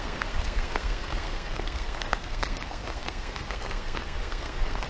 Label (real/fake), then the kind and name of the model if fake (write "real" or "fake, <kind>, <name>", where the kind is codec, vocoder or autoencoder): fake, codec, SNAC